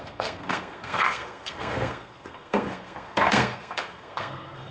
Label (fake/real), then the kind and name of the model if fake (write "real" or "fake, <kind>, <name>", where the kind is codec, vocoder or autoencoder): fake, codec, SNAC